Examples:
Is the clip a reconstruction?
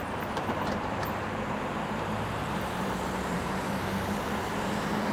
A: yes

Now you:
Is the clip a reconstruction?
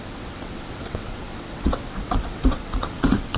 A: yes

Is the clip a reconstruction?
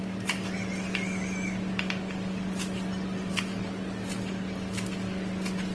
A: no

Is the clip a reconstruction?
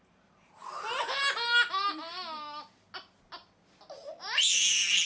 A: no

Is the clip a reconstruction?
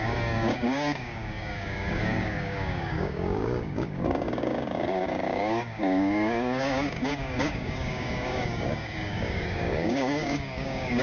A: yes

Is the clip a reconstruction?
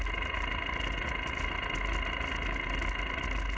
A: no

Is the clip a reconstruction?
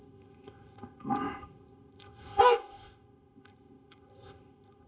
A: yes